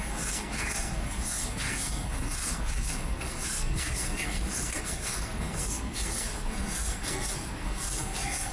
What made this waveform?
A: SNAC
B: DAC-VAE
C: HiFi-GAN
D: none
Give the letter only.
A